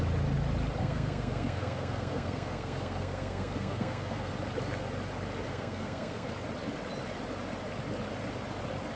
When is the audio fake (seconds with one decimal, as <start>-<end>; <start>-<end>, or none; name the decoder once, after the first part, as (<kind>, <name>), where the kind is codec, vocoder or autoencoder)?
0.8-4.3 (codec, SNAC); 5.5-6.3

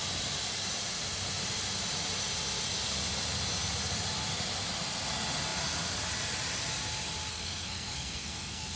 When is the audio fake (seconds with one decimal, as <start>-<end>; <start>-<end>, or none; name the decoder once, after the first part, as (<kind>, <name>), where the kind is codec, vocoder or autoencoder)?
7.3-8.8 (codec, SNAC)

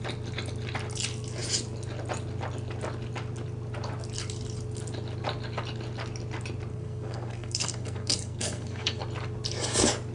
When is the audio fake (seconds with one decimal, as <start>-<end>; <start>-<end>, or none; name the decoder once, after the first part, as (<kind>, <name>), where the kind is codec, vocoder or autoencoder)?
6.7-9.0 (codec, SNAC)

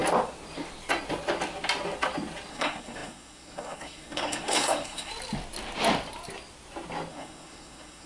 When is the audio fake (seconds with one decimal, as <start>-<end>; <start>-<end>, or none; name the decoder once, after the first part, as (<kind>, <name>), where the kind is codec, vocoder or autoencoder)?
2.5-5.1 (codec, SNAC); 7.1-8.1

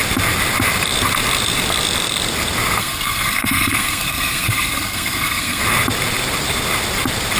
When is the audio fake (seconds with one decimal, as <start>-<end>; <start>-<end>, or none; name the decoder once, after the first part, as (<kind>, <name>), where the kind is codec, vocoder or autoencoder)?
2.8-5.6 (codec, SNAC)